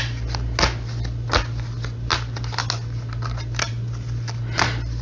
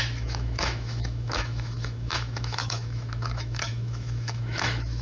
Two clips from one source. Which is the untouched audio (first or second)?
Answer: first